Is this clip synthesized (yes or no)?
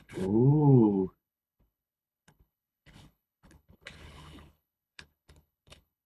yes